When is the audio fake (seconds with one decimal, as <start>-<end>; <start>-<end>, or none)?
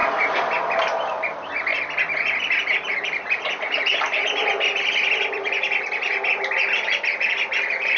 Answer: none